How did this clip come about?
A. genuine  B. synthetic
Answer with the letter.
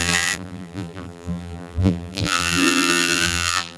B